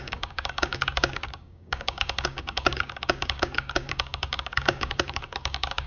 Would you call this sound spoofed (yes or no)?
yes